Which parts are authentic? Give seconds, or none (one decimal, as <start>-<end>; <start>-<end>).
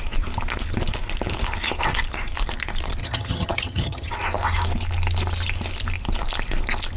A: 0.0-3.0; 4.1-7.0